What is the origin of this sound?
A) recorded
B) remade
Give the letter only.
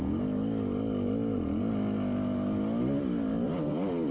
A